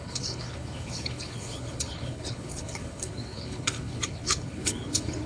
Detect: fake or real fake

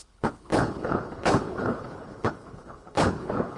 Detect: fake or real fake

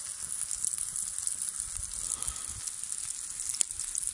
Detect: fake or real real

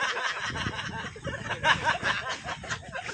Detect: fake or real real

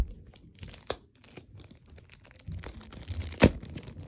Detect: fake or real real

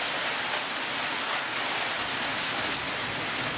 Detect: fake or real real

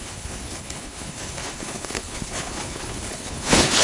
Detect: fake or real fake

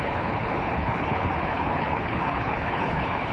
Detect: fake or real fake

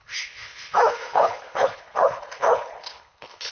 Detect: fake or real fake